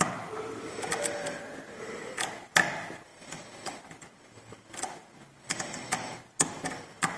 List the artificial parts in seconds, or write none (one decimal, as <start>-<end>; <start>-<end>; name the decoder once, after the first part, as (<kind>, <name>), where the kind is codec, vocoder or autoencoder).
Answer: none